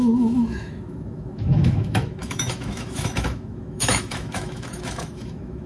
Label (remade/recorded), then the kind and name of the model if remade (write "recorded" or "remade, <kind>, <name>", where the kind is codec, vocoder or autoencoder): remade, autoencoder, DAC-VAE